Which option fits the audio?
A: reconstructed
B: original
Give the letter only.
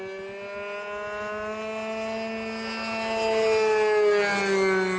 B